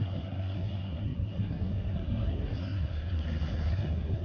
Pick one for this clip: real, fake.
fake